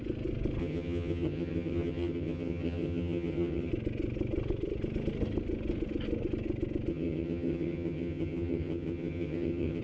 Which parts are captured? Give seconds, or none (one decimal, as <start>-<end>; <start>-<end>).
0.0-0.6; 3.7-6.9